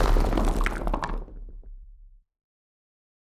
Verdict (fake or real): real